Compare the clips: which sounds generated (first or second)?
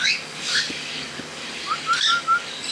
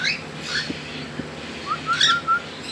first